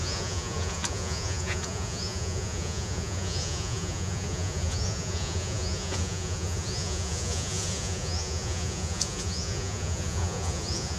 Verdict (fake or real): fake